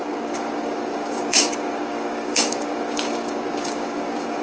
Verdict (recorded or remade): remade